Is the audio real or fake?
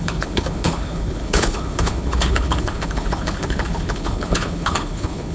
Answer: fake